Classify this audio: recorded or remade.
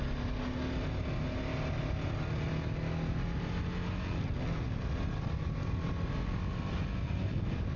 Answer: recorded